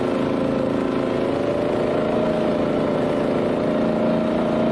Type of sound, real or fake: real